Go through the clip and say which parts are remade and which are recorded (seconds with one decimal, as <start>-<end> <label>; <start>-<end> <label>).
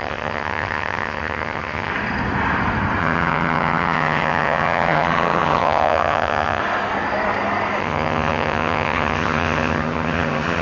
0.0-1.9 remade; 1.9-3.0 recorded; 3.0-6.6 remade; 6.6-7.8 recorded; 7.8-10.6 remade